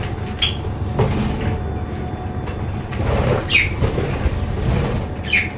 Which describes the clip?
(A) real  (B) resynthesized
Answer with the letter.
A